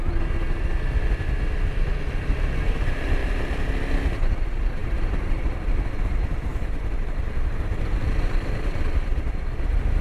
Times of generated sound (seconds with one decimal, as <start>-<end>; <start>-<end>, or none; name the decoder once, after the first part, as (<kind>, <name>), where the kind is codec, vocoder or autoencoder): 4.8-5.8 (vocoder, BigVGAN v2); 6.5-8.1

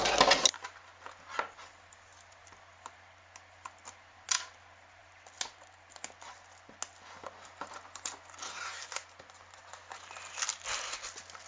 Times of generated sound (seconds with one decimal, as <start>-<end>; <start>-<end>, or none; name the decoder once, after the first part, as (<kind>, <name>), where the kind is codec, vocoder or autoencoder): none

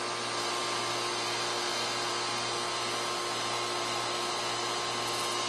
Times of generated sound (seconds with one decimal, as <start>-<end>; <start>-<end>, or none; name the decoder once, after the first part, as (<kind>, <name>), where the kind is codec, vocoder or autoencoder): none

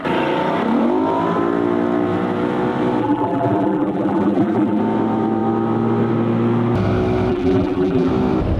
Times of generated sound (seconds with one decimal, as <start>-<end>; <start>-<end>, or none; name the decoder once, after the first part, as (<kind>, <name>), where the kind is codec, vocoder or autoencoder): 3.0-4.8 (vocoder, BigVGAN v2); 7.3-8.1

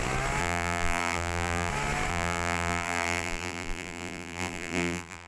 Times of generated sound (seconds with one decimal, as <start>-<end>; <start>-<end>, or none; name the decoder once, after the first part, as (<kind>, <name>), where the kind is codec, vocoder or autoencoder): 0.4-1.7 (vocoder, BigVGAN v2); 2.1-5.3

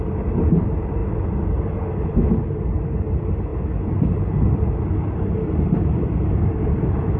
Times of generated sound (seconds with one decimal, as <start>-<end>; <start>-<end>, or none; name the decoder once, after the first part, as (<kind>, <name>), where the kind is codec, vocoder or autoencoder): none